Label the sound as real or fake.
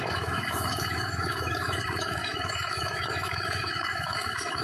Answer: fake